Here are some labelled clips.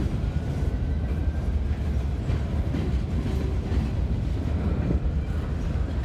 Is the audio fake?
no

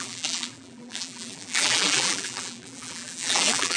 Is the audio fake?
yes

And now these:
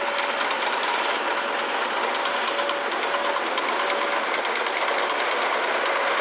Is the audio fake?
no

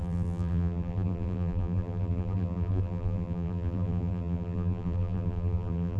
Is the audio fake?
yes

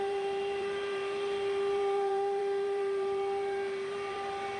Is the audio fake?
yes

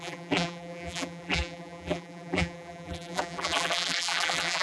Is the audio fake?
yes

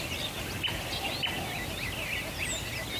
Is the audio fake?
no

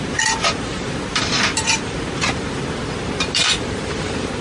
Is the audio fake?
yes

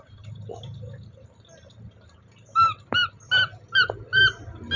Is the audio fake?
no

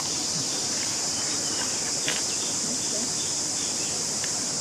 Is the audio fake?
yes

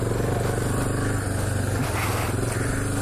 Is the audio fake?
no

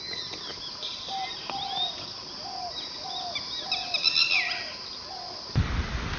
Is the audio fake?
no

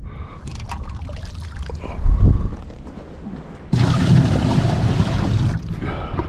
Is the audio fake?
no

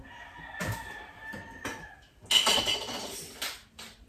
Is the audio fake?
no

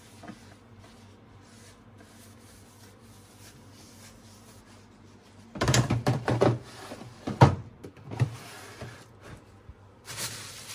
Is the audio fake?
no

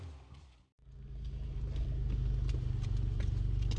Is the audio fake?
no